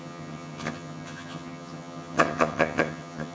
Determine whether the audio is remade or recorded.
remade